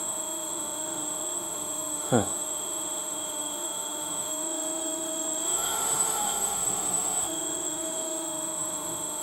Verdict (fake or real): fake